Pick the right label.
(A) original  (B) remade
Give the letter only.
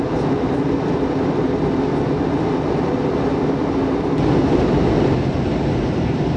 A